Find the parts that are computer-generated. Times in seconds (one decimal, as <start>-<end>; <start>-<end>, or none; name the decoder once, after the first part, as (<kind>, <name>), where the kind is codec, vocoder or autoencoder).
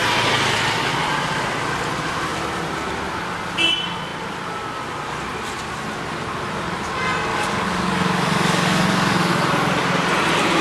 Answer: 7.3-9.3 (codec, DAC)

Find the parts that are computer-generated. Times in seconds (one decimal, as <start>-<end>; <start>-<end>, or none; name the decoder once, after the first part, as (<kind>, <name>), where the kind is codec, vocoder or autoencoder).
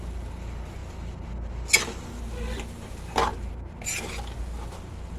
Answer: 3.3-4.1 (vocoder, BigVGAN v2)